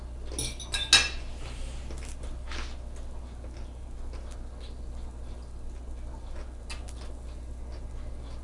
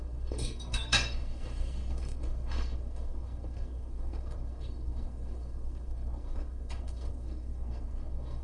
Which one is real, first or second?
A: first